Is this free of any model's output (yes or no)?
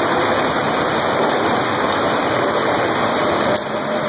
yes